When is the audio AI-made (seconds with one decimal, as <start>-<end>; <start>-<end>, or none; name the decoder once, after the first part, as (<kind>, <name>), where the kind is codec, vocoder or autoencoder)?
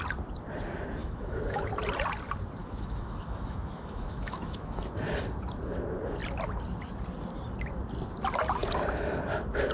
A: 1.0-1.6 (autoencoder, DAC-VAE); 2.6-4.9